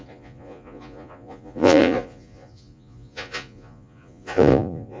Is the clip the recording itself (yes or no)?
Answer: no